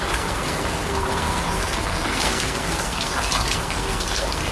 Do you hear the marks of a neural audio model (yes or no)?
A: yes